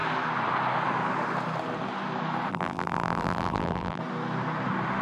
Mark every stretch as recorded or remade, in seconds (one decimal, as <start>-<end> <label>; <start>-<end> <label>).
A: 0.0-2.5 recorded; 2.5-4.0 remade; 4.0-5.0 recorded